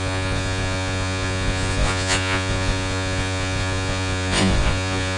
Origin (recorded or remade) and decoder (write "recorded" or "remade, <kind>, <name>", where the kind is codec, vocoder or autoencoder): remade, vocoder, Vocos